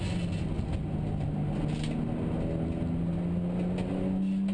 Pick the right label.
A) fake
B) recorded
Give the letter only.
B